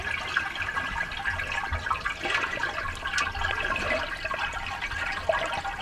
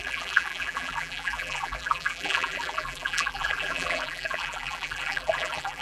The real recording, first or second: first